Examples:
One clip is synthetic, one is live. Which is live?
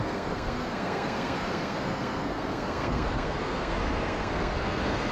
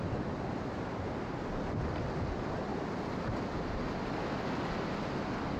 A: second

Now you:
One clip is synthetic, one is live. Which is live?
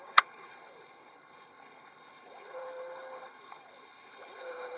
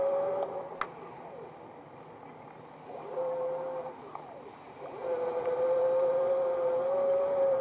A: second